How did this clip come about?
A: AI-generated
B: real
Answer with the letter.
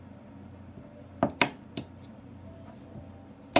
B